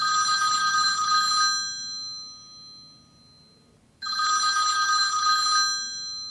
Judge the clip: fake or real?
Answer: real